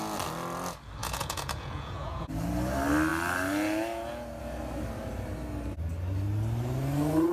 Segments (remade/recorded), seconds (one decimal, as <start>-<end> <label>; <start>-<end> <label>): 0.0-1.0 recorded; 1.0-2.3 remade; 2.3-7.3 recorded